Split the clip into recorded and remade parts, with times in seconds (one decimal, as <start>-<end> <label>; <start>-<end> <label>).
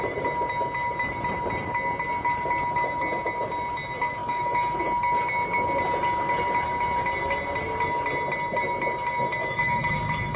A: 0.0-4.2 recorded; 4.2-4.8 remade; 4.8-9.4 recorded; 9.4-10.4 remade